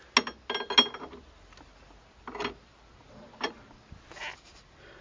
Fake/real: real